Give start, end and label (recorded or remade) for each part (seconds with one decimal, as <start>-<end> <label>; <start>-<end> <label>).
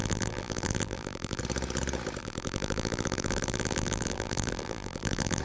0.0-1.4 remade; 1.4-2.2 recorded; 2.2-5.4 remade